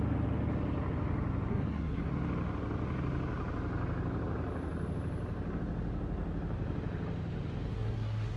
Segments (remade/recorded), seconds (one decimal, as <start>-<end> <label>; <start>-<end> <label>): 0.0-1.5 recorded; 1.5-2.1 remade; 2.1-7.7 recorded; 7.7-8.4 remade